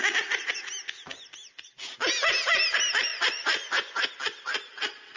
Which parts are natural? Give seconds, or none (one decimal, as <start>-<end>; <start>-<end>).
0.0-3.1; 4.1-5.2